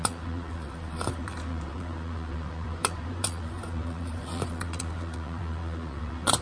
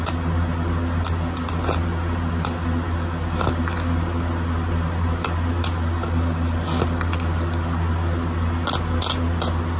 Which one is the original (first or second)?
second